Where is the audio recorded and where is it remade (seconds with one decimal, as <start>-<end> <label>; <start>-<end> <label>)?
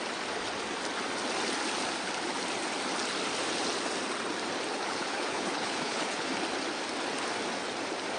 0.0-4.7 recorded; 4.7-6.3 remade; 6.3-8.2 recorded